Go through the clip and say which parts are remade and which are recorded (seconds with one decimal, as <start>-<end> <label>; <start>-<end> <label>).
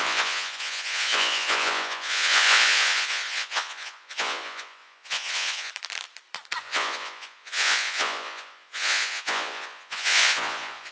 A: 0.0-5.7 remade; 5.7-6.6 recorded; 6.6-10.9 remade